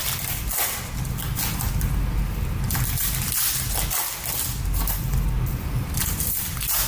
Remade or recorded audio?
recorded